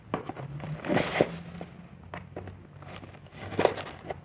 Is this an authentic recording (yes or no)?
yes